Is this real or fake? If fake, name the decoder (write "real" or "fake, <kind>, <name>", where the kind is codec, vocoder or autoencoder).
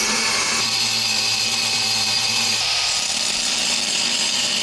fake, vocoder, BigVGAN v2